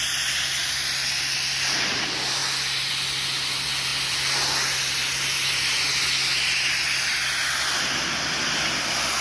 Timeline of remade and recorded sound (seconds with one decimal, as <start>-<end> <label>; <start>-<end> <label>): 0.0-9.2 recorded